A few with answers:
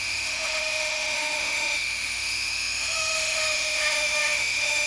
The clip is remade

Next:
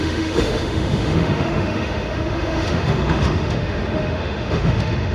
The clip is remade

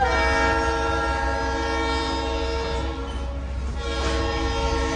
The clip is recorded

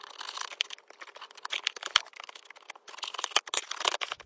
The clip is recorded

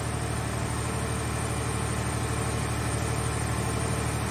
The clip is recorded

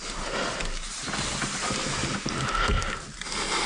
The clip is recorded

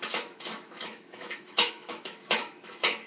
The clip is remade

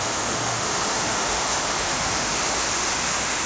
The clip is remade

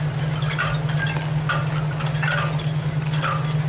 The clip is recorded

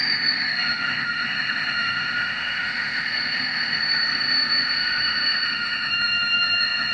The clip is remade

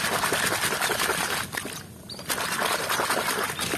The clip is recorded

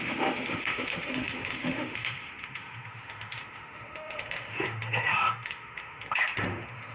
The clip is remade